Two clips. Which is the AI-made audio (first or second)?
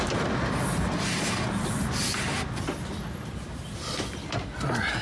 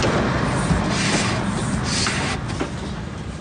first